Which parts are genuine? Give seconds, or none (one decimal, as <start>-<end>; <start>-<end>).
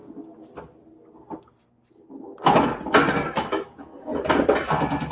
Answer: 0.0-3.1; 4.1-5.1